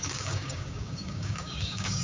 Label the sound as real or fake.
fake